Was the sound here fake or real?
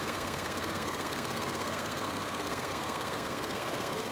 fake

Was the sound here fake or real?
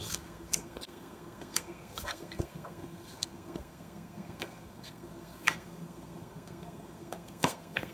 fake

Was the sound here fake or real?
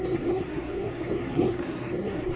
fake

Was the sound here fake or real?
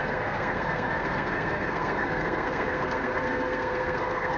fake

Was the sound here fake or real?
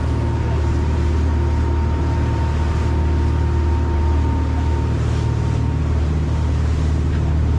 real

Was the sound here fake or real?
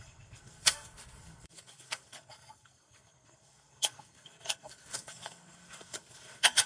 fake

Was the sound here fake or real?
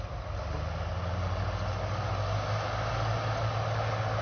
real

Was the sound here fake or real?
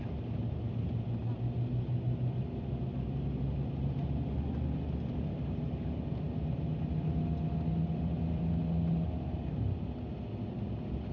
real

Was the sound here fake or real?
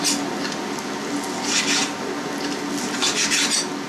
real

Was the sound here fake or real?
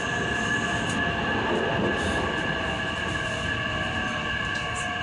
real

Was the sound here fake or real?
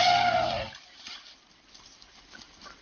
real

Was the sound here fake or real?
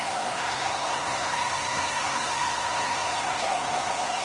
fake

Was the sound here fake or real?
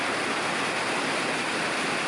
real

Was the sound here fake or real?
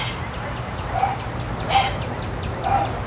real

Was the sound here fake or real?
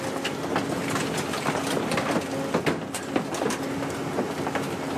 real